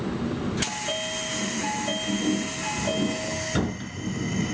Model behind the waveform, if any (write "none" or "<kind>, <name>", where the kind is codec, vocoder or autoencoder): none